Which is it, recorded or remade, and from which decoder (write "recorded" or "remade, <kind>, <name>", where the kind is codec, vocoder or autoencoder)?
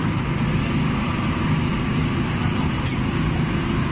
recorded